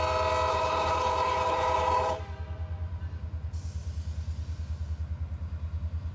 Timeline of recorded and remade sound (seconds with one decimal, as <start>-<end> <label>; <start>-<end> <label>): 0.0-0.5 recorded; 0.5-2.2 remade; 2.2-6.1 recorded